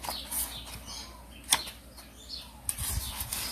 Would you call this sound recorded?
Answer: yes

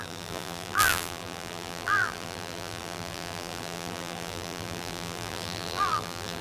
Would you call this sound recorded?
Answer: no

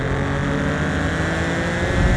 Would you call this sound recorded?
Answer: yes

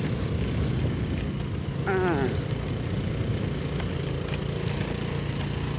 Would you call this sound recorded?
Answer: yes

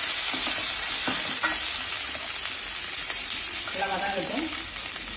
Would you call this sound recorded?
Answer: no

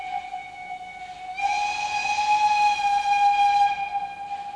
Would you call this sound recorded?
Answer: yes